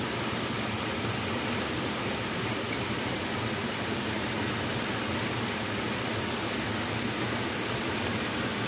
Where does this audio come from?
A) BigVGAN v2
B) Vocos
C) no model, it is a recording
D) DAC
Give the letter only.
C